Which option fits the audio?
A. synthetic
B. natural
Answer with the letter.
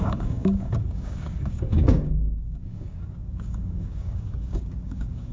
A